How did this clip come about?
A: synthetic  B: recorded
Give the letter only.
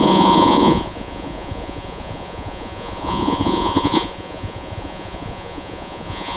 A